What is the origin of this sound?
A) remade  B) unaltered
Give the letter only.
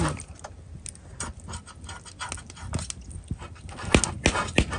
B